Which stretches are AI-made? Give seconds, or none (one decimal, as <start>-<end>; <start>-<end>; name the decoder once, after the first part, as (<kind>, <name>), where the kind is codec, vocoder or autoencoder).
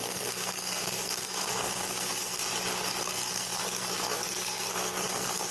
0.0-2.4 (codec, SNAC); 3.0-5.5